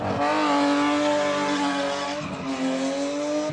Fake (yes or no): no